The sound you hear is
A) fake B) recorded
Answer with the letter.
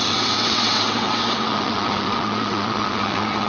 A